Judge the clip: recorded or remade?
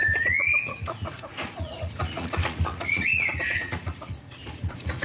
remade